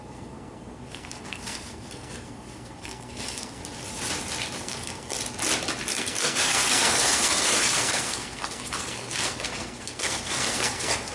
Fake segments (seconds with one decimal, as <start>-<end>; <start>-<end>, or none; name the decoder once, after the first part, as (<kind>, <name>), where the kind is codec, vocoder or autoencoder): 0.0-3.6 (codec, SNAC); 4.6-5.1; 5.9-11.1